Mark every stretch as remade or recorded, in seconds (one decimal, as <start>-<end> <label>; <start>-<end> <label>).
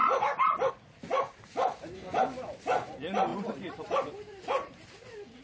0.0-0.7 remade; 0.7-3.3 recorded; 3.3-4.9 remade; 4.9-5.4 recorded